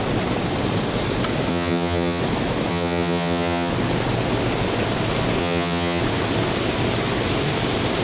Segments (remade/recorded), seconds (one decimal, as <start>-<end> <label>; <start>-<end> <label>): 0.0-1.5 recorded; 1.5-2.2 remade; 2.2-2.7 recorded; 2.7-3.7 remade; 3.7-5.4 recorded; 5.4-6.0 remade; 6.0-8.0 recorded